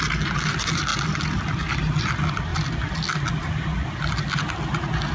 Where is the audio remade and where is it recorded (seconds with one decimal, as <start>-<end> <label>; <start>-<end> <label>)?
0.0-5.1 recorded